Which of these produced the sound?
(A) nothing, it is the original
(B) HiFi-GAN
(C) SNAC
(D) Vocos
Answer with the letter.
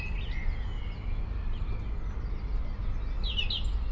A